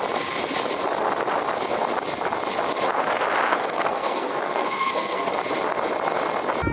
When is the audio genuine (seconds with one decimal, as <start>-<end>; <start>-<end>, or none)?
0.0-3.5; 5.3-6.7